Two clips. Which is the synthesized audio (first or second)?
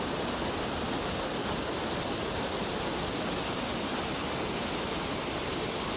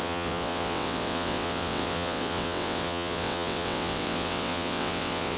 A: second